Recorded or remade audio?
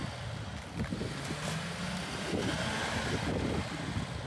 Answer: recorded